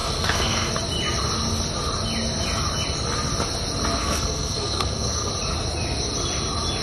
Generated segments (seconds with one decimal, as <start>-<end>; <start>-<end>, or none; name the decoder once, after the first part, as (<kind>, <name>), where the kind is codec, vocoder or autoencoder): 0.0-0.7 (codec, SNAC); 4.0-5.3